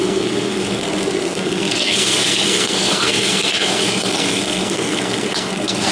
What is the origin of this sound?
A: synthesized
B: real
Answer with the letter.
A